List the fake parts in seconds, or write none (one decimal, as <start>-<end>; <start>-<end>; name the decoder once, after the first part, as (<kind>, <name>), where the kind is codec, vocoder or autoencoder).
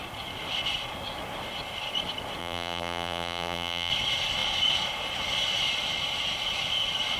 2.4-3.9 (vocoder, BigVGAN v2)